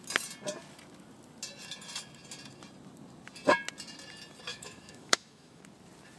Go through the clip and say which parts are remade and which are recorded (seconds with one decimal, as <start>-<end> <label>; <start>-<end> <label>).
0.0-4.5 recorded; 4.5-5.6 remade; 5.6-6.2 recorded

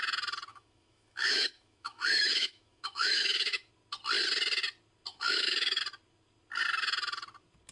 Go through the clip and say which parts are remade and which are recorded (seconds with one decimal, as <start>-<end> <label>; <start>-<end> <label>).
0.0-0.5 recorded; 0.5-3.7 remade; 3.7-5.1 recorded; 5.1-5.8 remade; 5.8-7.7 recorded

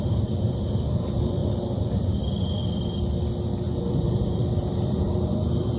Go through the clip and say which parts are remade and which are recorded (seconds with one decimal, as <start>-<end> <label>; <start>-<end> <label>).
0.0-1.4 remade; 1.4-3.8 recorded; 3.8-4.4 remade; 4.4-4.9 recorded; 4.9-5.8 remade

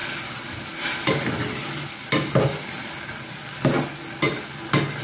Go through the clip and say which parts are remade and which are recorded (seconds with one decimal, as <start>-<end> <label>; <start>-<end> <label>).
0.0-5.0 recorded

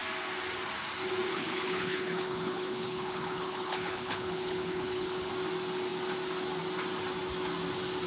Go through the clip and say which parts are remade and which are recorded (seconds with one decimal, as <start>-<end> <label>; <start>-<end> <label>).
0.0-1.3 recorded; 1.3-5.3 remade; 5.3-8.1 recorded

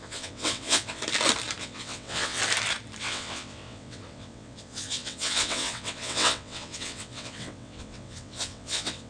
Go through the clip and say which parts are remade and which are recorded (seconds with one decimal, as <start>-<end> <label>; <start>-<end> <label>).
0.0-1.0 remade; 1.0-1.6 recorded; 1.6-2.4 remade; 2.4-3.0 recorded; 3.0-9.1 remade

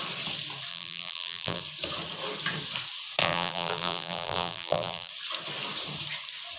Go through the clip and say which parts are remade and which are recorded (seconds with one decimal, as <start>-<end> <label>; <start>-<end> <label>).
0.0-0.7 recorded; 0.7-1.6 remade; 1.6-3.2 recorded; 3.2-5.1 remade; 5.1-6.6 recorded